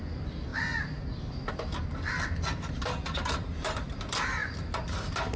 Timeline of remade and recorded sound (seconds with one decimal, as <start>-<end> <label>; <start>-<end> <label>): 0.0-5.4 recorded